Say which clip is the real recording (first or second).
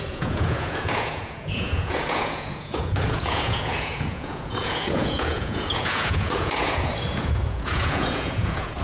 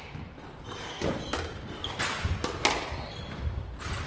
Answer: second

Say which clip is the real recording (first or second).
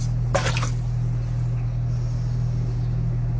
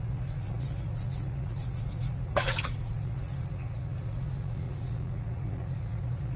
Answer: first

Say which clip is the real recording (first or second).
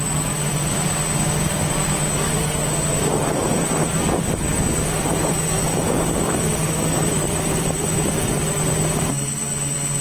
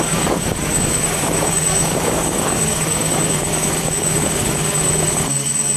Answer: first